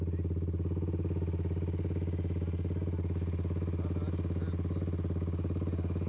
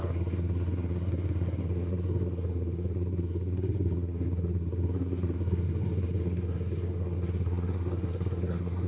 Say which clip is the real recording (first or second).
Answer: first